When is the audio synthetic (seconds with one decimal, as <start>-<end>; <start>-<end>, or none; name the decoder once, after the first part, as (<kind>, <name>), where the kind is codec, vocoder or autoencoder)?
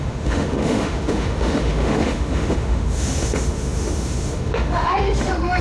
0.0-5.6 (autoencoder, DAC-VAE)